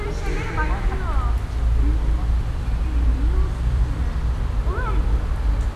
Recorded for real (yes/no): yes